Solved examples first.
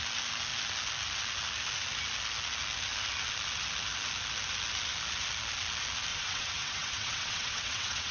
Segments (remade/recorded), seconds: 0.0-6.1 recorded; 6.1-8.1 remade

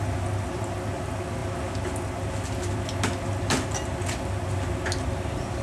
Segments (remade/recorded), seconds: 0.0-5.6 recorded

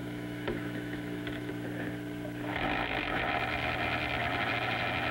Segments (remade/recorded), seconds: 0.0-1.5 remade; 1.5-2.5 recorded; 2.5-3.2 remade; 3.2-5.1 recorded

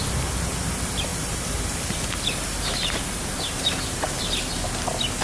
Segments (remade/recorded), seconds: 0.0-1.1 recorded; 1.1-4.2 remade; 4.2-5.2 recorded

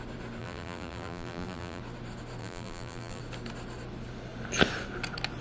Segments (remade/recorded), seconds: 0.0-0.4 recorded; 0.4-1.8 remade; 1.8-2.4 recorded; 2.4-3.2 remade; 3.2-5.4 recorded

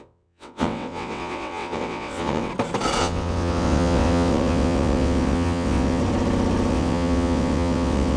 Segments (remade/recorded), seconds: 0.0-2.5 remade; 2.5-3.0 recorded; 3.0-6.0 remade; 6.0-6.7 recorded; 6.7-8.2 remade

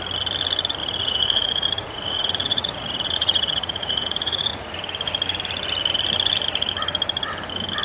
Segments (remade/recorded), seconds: 0.0-0.8 recorded; 0.8-4.7 remade; 4.7-7.8 recorded